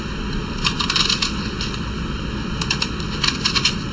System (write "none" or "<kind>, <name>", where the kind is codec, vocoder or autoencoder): vocoder, BigVGAN v2